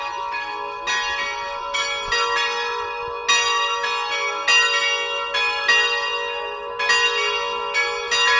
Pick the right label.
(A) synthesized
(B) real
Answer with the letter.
B